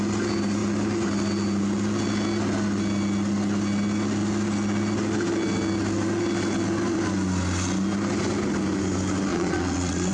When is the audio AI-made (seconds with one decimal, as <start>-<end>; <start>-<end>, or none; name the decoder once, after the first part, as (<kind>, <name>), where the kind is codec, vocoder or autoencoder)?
9.3-10.1 (vocoder, Vocos)